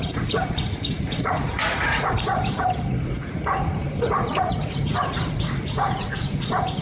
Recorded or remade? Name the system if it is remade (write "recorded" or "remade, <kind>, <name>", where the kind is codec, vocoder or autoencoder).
remade, vocoder, Vocos